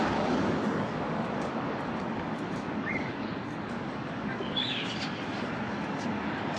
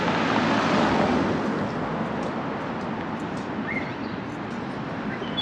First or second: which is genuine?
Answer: second